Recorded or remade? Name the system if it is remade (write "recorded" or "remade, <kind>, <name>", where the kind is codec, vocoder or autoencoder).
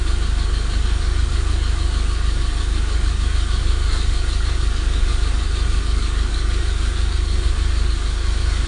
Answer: remade, codec, DAC